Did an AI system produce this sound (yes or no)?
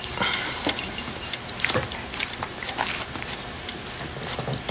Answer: no